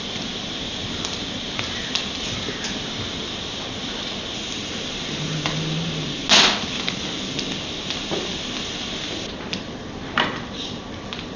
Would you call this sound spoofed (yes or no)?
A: no